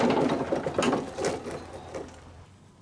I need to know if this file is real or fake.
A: real